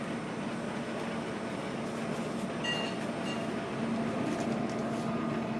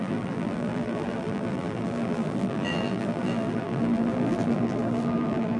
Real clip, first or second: first